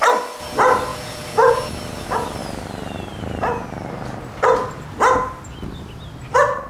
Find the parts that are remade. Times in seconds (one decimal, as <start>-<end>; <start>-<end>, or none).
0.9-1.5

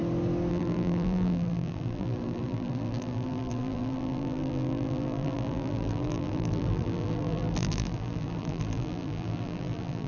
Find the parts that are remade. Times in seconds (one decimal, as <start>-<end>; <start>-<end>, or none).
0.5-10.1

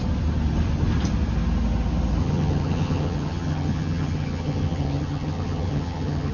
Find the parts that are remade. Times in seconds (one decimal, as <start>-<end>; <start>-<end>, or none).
2.2-6.3

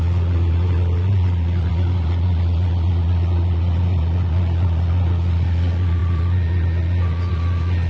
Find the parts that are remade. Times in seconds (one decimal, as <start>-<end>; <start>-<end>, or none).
0.0-7.9

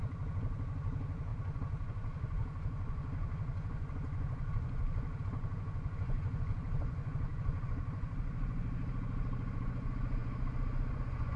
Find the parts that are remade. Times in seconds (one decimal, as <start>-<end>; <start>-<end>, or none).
0.0-11.4

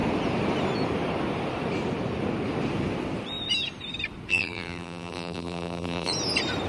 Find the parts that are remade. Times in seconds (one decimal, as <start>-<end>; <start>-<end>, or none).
4.3-6.1